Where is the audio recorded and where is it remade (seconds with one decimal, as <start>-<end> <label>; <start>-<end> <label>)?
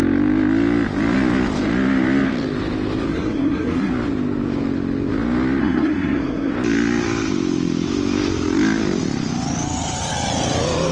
0.0-3.1 recorded; 3.1-3.9 remade; 3.9-5.6 recorded; 5.6-6.5 remade; 6.5-10.9 recorded